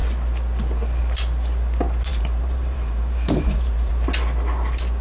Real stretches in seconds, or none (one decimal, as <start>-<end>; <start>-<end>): 0.0-2.1; 3.9-5.0